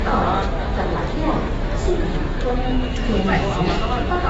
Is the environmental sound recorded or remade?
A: remade